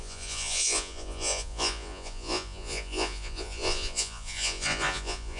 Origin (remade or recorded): remade